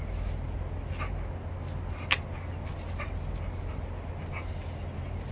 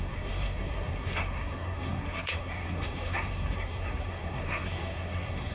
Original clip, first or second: first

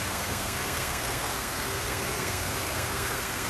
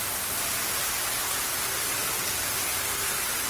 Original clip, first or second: second